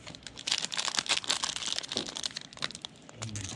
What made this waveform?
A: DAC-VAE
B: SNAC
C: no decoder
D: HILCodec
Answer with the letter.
C